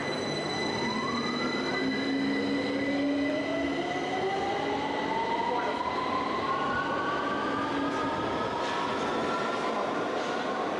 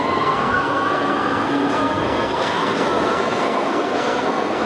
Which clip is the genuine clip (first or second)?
first